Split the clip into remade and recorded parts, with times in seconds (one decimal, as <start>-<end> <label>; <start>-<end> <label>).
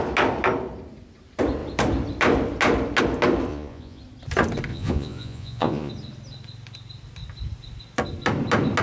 0.0-3.5 recorded; 3.5-4.0 remade; 4.0-4.7 recorded; 4.7-5.9 remade; 5.9-8.8 recorded